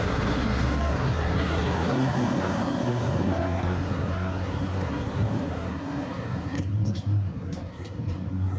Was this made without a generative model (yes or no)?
no